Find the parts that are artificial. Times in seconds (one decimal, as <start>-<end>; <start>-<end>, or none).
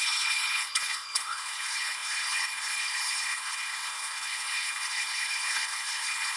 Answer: 0.0-6.4